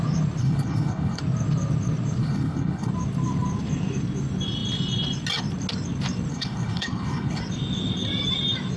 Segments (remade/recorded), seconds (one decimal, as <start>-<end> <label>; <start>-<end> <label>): 0.0-0.4 recorded; 0.4-1.2 remade; 1.2-2.2 recorded; 2.2-2.9 remade; 2.9-6.3 recorded; 6.3-7.4 remade; 7.4-8.8 recorded